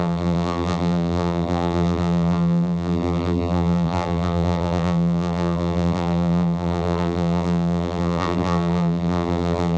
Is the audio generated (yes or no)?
yes